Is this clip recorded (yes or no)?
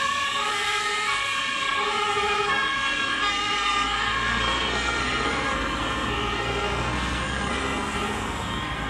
no